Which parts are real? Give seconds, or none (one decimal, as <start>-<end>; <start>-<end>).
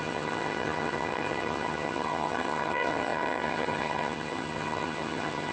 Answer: none